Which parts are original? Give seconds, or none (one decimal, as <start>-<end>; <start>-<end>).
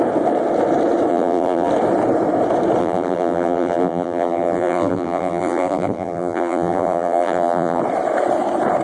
0.0-1.1; 1.7-2.8; 7.8-8.8